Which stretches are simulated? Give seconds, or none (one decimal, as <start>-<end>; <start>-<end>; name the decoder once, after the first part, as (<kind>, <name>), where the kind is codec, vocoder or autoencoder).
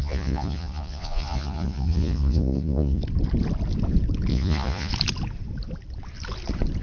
0.0-3.0 (vocoder, Vocos); 4.3-4.9